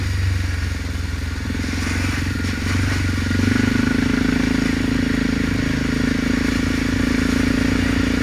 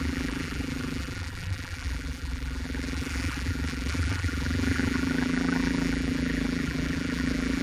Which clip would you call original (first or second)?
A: first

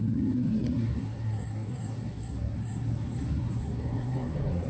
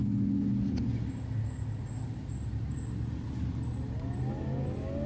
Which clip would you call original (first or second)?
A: second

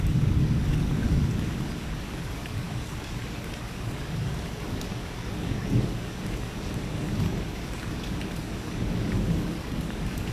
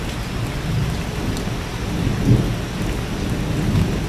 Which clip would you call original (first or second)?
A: second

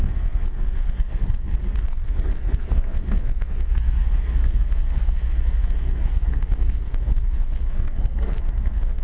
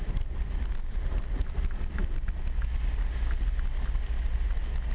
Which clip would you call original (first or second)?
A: second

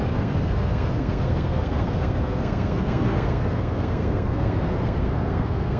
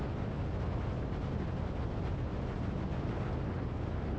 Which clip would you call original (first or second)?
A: second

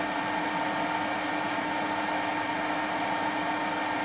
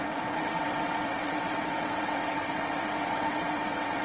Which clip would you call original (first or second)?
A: first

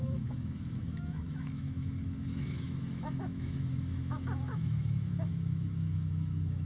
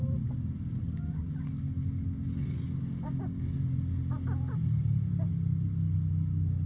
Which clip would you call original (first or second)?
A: second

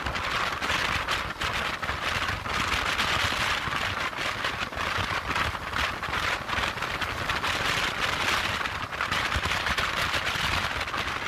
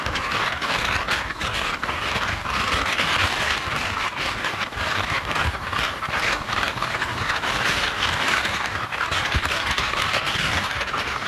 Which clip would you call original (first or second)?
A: first